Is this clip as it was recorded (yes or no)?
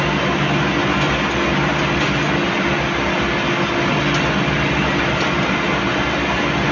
yes